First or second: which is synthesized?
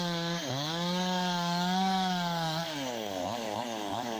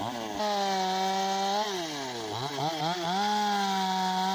first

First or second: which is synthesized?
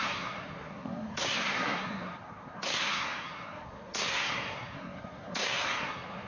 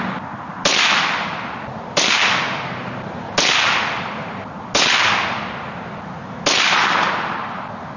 first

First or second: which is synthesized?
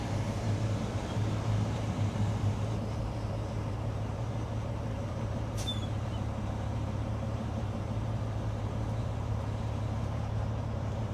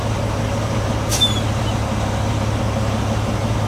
first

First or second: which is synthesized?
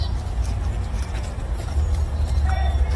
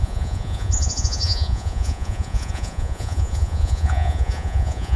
second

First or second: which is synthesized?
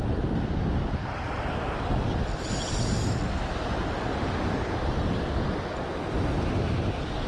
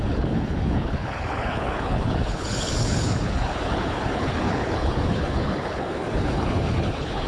second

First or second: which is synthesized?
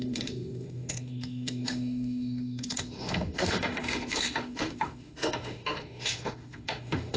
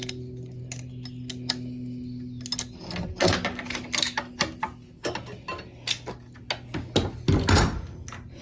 first